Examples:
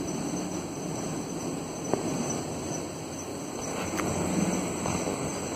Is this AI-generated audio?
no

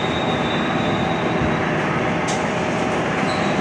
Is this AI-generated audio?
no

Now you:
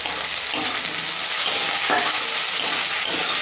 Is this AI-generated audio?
no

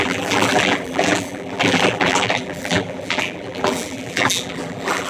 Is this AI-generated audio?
yes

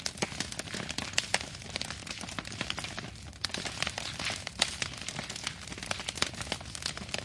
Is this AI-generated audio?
no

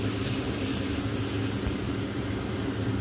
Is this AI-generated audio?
no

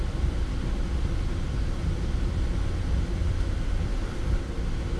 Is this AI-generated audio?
no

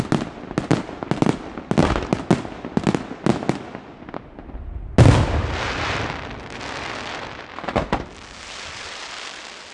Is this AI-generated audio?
no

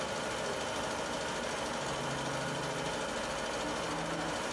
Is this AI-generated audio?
no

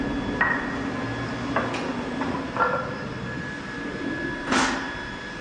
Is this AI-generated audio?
no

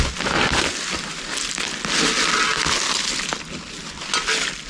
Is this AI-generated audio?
no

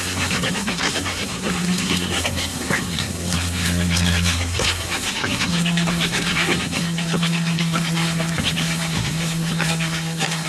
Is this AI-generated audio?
yes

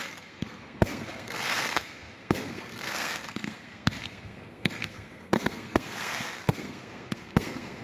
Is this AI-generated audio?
yes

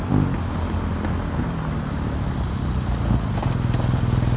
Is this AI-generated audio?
no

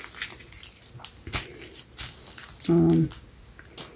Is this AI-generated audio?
no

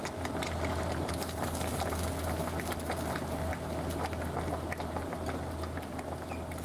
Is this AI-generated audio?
no